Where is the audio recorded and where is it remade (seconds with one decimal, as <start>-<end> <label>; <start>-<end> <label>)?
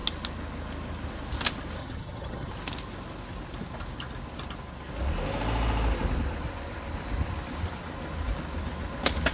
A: 0.0-1.8 recorded; 1.8-2.5 remade; 2.5-9.3 recorded